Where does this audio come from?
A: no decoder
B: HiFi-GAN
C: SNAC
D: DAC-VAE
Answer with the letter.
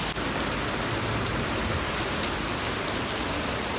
A